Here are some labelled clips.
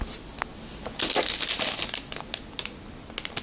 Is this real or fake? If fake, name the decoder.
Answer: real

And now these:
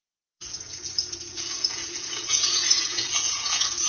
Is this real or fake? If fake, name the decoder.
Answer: fake, vocoder, Vocos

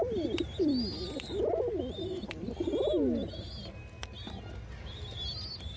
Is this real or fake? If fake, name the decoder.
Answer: real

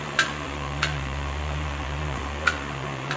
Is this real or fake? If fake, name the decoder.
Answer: fake, vocoder, Vocos